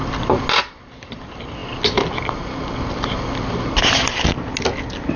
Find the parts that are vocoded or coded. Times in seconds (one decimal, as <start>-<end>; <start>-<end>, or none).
none